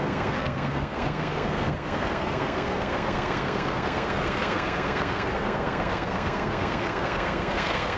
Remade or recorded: remade